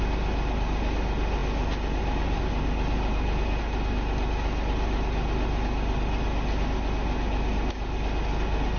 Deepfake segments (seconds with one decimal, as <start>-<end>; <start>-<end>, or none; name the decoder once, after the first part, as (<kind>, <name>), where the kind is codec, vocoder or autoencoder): none

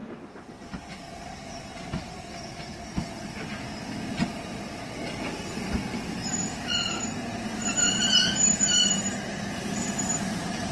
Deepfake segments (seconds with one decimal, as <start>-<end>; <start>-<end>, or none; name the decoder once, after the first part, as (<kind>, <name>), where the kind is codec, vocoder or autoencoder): none